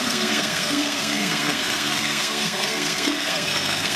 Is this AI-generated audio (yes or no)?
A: yes